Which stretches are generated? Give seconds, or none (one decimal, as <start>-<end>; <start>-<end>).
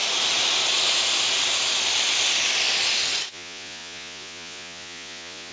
3.3-5.5